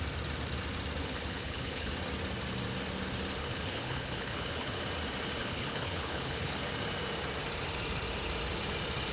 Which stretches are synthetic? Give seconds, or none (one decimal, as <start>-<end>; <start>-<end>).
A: 1.0-1.9; 3.4-4.8; 5.4-6.6